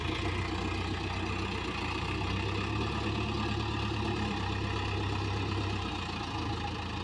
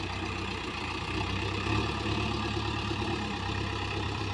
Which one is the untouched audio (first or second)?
first